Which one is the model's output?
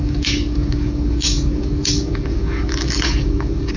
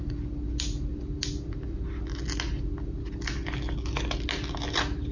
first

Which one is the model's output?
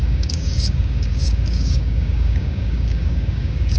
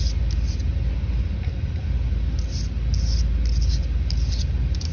first